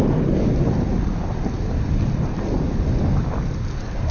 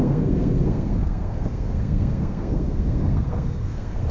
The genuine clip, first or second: first